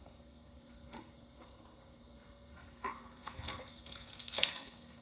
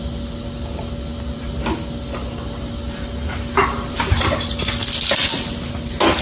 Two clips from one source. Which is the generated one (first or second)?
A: first